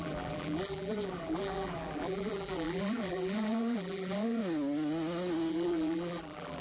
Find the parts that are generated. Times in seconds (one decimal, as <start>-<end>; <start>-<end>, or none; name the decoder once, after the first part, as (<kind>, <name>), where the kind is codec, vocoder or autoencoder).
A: 0.0-4.4 (vocoder, BigVGAN v2); 5.5-6.6